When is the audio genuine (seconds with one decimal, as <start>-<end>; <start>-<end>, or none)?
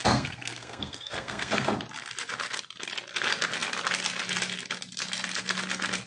1.8-6.1